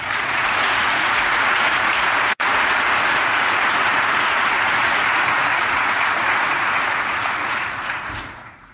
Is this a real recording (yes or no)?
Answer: no